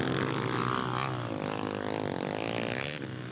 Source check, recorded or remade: recorded